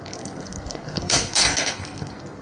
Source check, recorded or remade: remade